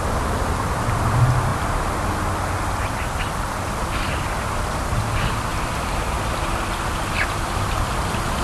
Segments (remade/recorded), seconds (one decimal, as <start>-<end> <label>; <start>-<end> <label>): 0.0-8.4 recorded